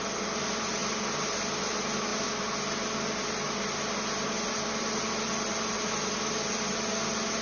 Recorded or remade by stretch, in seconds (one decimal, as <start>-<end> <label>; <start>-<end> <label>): 0.0-7.4 recorded